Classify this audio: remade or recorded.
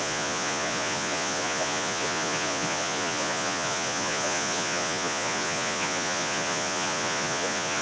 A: remade